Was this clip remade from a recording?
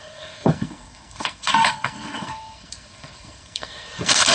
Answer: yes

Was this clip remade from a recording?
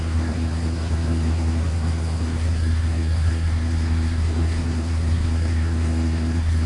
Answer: yes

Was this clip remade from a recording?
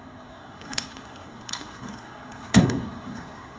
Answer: yes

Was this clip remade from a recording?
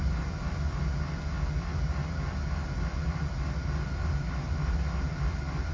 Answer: no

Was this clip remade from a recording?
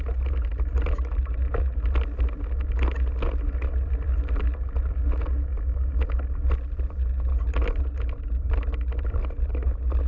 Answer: no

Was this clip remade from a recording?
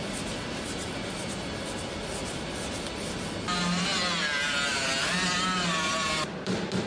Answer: no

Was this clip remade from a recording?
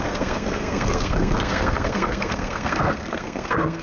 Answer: yes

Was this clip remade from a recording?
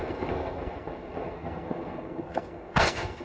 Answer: yes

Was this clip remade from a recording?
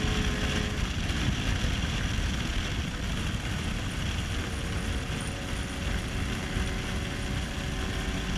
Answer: no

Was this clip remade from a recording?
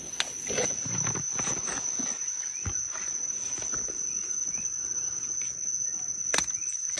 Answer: no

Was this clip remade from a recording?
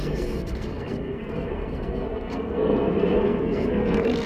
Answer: yes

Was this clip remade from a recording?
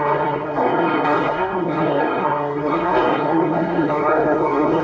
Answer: yes